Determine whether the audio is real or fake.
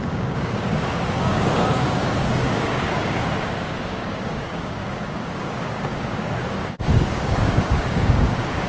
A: fake